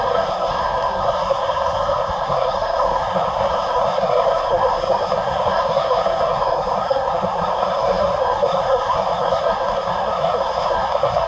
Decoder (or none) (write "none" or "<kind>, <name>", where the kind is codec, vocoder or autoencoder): codec, SNAC